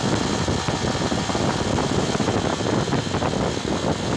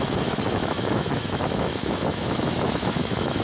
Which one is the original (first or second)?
first